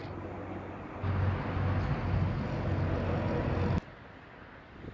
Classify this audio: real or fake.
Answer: real